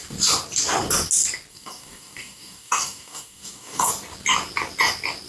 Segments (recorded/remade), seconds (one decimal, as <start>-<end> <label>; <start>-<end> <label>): 0.0-1.5 recorded; 1.5-3.9 remade; 3.9-5.3 recorded